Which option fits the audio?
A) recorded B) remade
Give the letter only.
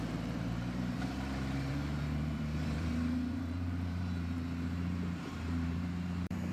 B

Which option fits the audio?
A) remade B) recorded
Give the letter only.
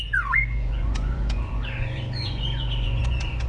A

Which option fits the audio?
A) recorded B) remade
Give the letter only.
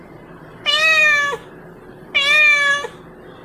A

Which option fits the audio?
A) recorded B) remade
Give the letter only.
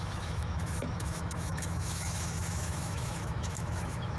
B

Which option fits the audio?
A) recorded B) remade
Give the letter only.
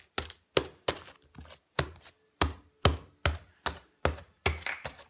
A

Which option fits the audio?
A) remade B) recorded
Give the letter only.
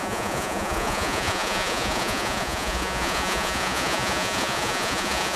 A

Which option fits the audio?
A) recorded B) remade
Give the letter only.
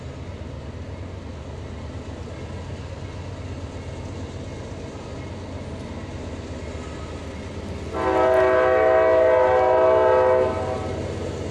A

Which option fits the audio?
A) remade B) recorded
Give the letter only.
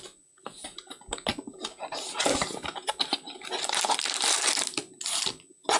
B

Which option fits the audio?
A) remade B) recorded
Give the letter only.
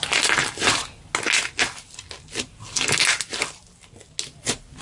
B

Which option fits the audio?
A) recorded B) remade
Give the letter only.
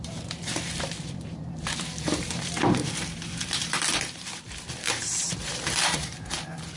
B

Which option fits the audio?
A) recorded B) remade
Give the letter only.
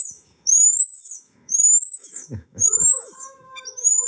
B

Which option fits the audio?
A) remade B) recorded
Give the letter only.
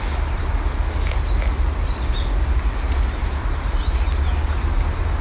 B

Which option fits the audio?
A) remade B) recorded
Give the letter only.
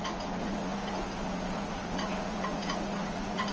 A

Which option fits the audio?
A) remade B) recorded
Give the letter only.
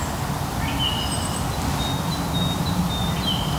B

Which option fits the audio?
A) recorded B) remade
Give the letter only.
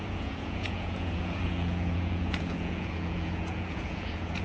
B